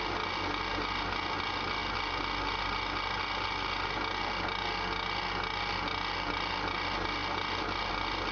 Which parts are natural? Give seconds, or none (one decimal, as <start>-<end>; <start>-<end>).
0.0-8.3